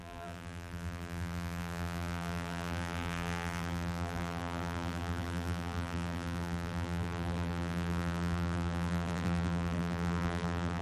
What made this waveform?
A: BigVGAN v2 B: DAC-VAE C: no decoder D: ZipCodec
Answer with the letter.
A